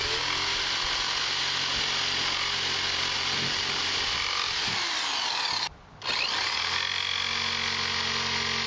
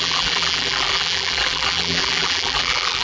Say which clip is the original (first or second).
first